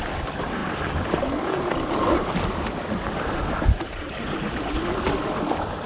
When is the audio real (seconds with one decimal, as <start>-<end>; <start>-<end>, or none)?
none